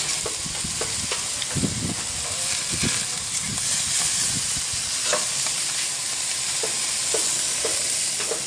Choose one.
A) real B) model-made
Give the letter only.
A